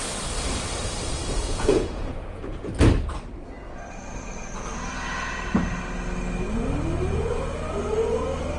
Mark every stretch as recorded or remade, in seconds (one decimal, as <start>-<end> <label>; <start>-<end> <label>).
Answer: 0.0-1.4 recorded; 1.4-2.7 remade; 2.7-8.6 recorded